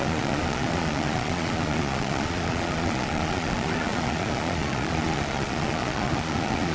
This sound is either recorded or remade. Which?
remade